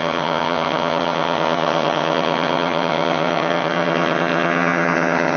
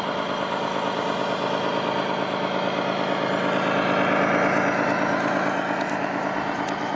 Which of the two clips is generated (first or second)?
first